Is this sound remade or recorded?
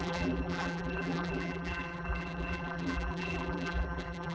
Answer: remade